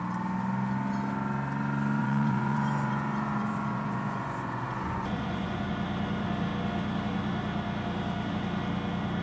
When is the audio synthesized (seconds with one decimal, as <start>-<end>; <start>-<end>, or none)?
2.0-5.7